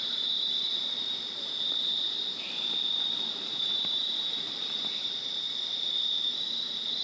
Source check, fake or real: fake